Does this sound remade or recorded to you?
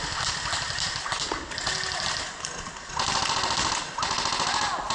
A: recorded